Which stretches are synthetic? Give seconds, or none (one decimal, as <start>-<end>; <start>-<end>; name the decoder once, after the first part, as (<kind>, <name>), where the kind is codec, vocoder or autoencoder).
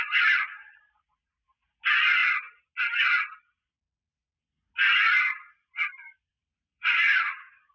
0.0-2.2 (vocoder, BigVGAN v2); 5.5-7.7